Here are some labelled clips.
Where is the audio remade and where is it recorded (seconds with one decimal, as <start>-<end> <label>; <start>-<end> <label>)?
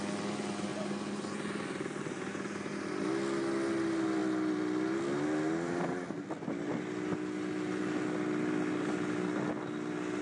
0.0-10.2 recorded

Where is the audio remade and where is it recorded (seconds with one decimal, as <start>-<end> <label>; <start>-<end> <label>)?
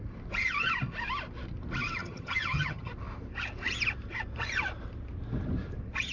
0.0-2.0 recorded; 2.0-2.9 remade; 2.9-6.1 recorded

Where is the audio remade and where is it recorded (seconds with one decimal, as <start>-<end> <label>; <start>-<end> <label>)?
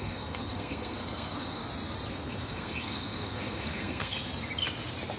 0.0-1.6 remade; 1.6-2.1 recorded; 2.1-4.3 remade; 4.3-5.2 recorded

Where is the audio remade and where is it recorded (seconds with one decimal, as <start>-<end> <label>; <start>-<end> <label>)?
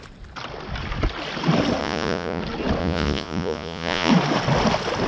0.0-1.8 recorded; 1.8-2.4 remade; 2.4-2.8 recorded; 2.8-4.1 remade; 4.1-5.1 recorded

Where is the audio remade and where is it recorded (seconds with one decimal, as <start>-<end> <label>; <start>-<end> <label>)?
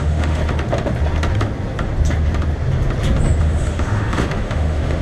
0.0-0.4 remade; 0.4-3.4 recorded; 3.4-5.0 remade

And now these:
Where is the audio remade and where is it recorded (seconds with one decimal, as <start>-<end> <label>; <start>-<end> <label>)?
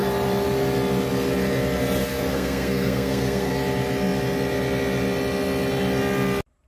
0.0-2.3 recorded; 2.3-3.5 remade; 3.5-6.7 recorded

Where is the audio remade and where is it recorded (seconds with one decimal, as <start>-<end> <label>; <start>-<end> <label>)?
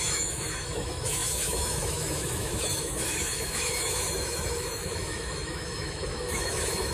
0.0-6.9 remade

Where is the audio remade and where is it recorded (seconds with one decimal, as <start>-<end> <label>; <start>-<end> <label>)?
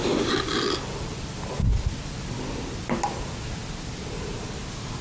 0.0-5.0 recorded